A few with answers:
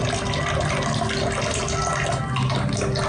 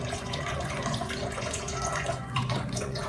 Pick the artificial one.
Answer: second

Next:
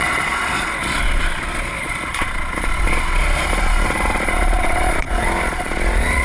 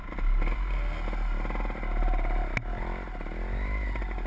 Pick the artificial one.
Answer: first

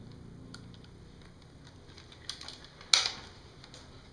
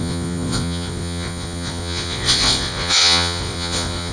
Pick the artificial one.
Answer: second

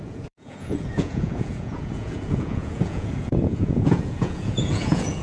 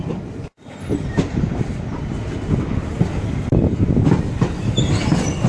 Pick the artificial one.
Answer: first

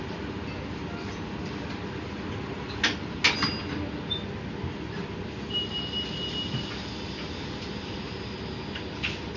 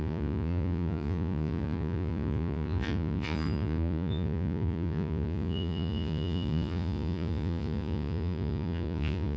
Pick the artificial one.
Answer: second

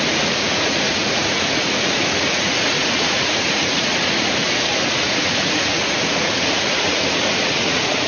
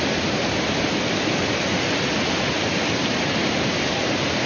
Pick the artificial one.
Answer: first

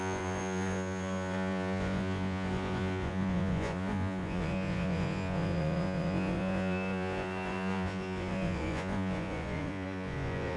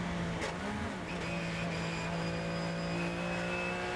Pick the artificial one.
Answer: first